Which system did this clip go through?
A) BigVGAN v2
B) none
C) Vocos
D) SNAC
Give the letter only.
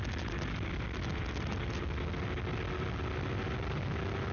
B